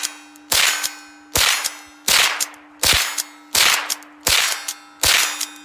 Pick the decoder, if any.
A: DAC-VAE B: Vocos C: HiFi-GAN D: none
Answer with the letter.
D